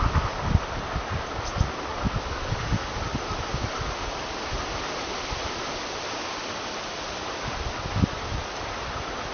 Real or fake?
real